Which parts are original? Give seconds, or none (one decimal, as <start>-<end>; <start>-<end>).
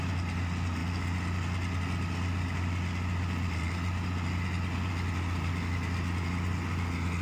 0.0-7.2